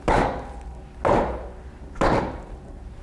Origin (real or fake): real